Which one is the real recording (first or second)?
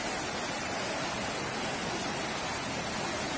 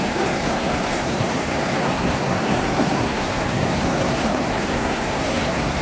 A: first